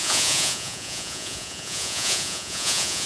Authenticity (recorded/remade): remade